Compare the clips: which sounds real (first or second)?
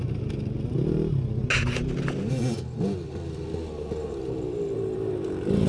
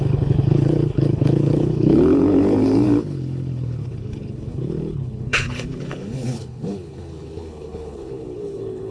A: first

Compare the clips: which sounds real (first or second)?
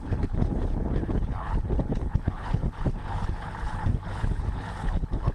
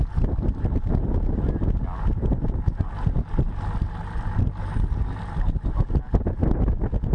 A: second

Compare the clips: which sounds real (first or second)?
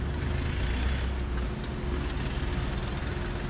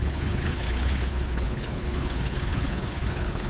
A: first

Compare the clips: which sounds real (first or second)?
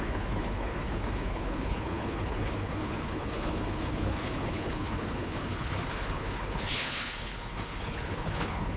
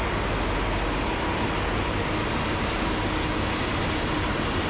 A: second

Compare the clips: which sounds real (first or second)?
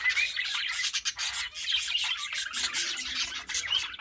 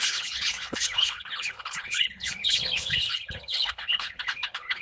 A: first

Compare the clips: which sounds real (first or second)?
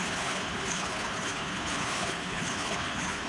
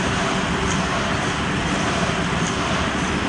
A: second